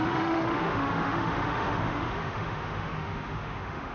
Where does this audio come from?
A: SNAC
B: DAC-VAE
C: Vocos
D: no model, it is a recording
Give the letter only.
B